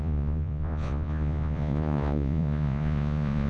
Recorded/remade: remade